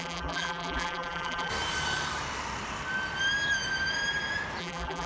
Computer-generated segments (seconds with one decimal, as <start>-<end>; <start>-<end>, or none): 0.0-1.5; 4.6-5.1

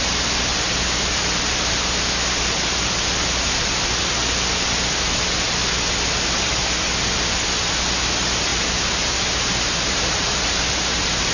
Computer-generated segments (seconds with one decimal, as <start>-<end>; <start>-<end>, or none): 8.5-11.3